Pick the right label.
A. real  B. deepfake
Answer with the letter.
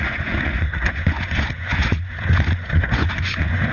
B